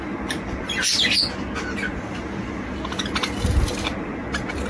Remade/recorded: recorded